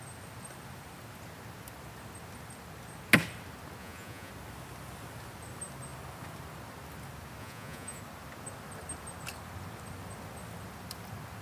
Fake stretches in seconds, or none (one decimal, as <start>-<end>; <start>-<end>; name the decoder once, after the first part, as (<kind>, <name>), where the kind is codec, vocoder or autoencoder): 3.8-4.3 (vocoder, Vocos); 7.4-8.0